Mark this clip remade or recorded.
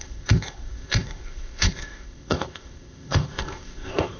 remade